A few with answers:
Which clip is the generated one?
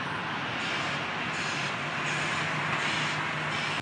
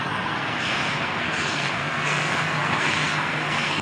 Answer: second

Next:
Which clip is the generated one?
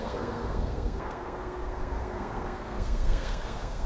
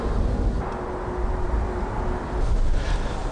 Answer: first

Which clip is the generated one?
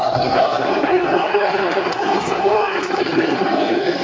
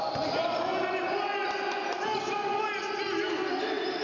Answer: first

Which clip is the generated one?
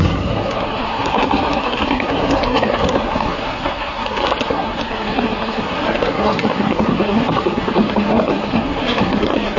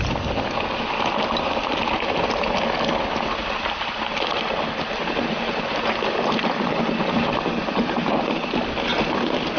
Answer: first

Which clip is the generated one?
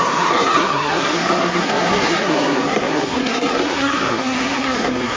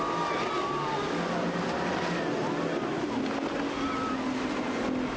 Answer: first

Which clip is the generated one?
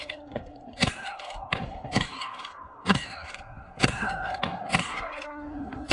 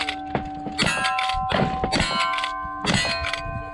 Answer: first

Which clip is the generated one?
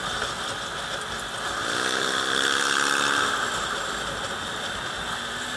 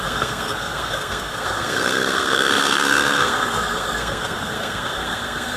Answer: second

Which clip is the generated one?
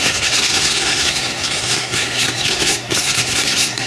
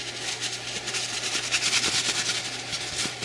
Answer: first